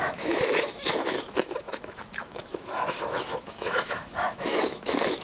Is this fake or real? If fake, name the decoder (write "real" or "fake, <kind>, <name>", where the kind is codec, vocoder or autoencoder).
fake, autoencoder, DAC-VAE